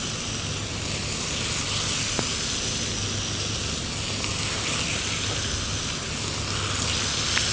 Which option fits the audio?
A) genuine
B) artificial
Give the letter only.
A